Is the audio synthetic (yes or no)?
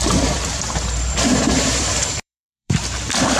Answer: yes